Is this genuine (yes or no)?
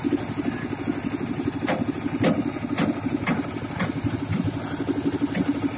yes